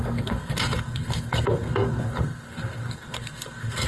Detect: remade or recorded remade